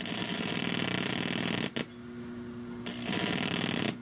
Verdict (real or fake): real